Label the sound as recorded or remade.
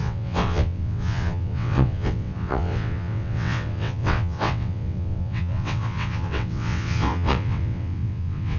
remade